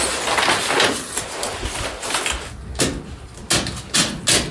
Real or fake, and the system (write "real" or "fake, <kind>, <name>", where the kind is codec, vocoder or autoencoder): real